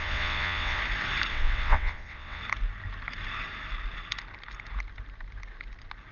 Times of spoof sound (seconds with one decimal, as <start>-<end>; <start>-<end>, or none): 0.0-0.8; 1.3-2.4